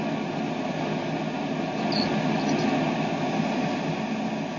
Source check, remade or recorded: recorded